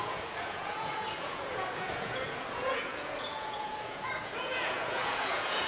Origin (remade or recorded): remade